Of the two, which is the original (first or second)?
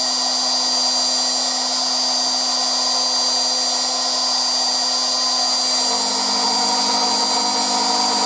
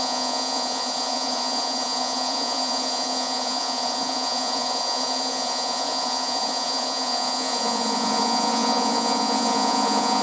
first